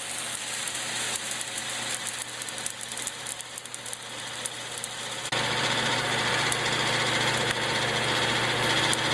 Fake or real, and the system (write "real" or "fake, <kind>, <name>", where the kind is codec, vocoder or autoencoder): real